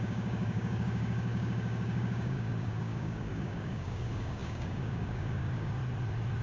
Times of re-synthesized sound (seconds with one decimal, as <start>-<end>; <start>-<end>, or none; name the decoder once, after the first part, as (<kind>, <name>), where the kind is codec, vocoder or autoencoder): 0.0-5.8 (codec, DAC)